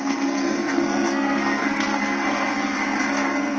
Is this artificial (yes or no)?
yes